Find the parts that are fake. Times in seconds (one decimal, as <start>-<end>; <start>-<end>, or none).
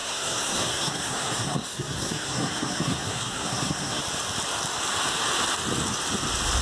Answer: 0.0-4.0